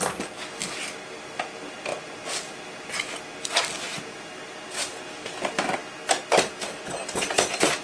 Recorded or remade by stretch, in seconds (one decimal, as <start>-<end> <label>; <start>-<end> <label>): 0.0-7.8 recorded